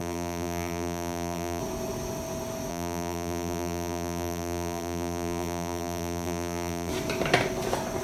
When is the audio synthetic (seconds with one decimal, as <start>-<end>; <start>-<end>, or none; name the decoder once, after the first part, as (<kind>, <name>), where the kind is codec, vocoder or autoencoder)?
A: 0.0-1.6 (vocoder, BigVGAN v2); 2.7-6.9